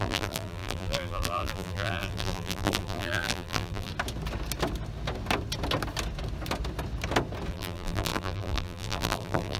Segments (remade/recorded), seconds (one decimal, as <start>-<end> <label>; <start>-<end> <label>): 0.0-3.9 remade; 3.9-7.5 recorded; 7.5-9.6 remade